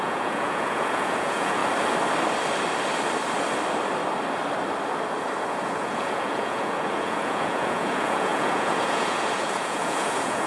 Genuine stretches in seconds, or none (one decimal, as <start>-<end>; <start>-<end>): 1.6-5.5